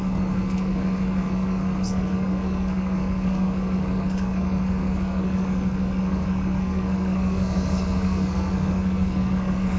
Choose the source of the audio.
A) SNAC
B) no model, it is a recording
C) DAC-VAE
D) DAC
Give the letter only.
A